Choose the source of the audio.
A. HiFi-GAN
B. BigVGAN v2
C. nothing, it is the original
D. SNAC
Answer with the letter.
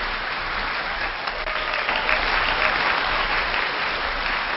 B